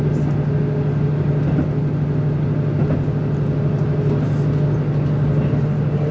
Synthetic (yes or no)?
no